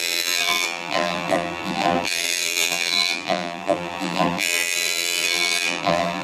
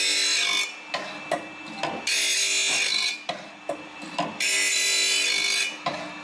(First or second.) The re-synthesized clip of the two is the first